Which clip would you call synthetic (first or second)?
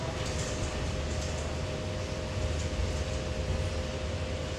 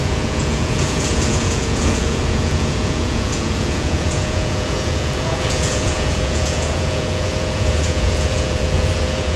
second